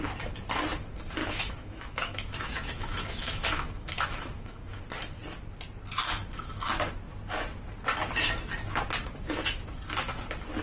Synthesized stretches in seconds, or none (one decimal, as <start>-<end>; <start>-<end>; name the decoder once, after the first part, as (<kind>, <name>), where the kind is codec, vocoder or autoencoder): 1.2-4.8 (autoencoder, DAC-VAE)